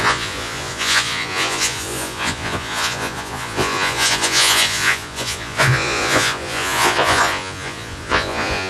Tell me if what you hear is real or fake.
fake